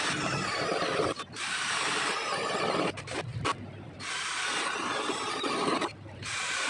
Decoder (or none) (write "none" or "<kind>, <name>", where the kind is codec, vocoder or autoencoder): vocoder, BigVGAN v2